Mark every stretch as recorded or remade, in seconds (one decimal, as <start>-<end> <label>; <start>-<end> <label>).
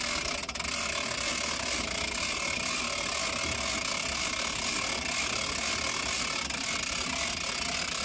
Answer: 0.0-8.0 recorded